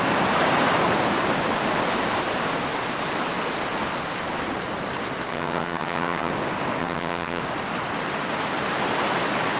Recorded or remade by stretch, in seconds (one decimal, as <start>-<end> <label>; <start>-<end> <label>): 0.0-5.3 recorded; 5.3-6.3 remade; 6.3-6.8 recorded; 6.8-7.4 remade; 7.4-9.6 recorded